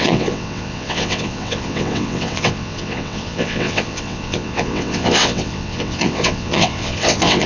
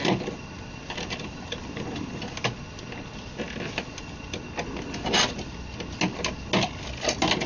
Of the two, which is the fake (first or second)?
first